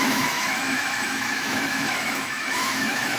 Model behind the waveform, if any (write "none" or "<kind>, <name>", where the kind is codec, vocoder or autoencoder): autoencoder, DAC-VAE